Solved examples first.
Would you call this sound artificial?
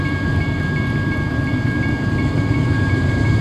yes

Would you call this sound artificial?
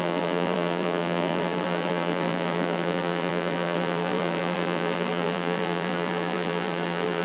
yes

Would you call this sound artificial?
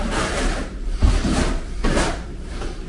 yes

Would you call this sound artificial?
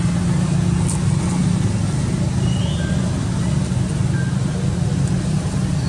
no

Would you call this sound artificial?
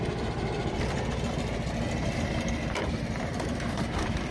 yes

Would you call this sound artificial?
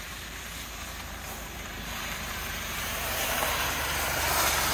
yes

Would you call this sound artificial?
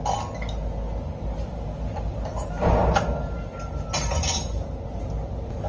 no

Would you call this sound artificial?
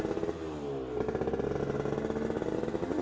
no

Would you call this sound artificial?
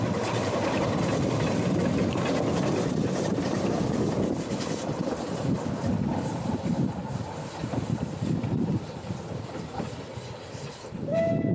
no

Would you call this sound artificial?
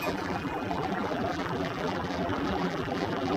yes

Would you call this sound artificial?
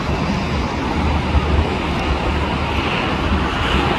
no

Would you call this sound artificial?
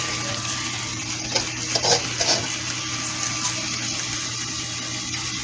no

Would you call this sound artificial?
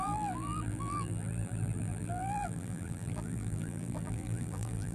yes